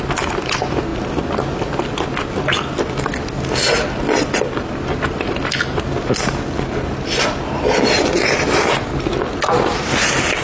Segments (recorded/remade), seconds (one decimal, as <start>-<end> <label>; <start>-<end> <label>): 0.0-10.4 recorded